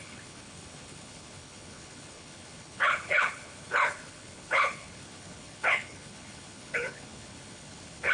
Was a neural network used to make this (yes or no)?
yes